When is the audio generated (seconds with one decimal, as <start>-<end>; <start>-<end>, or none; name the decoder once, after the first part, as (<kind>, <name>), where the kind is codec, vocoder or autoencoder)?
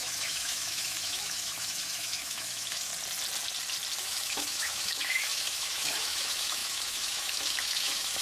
0.0-2.9 (autoencoder, DAC-VAE); 4.0-8.2